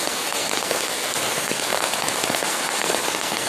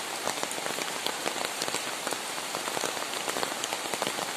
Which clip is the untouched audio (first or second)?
second